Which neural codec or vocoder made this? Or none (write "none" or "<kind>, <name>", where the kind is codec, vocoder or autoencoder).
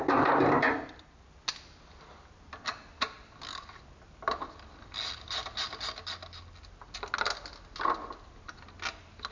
none